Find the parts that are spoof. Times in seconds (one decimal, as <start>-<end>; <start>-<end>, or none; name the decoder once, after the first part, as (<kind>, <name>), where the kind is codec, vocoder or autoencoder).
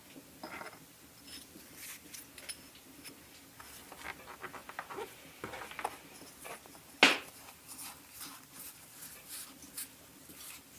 none